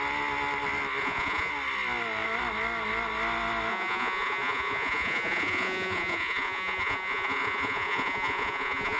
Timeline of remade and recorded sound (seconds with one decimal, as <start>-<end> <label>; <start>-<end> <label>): 0.0-1.0 recorded; 1.0-1.5 remade; 1.5-3.7 recorded; 3.7-9.0 remade